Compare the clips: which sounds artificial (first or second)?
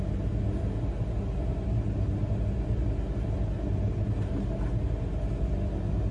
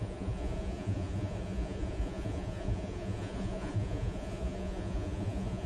second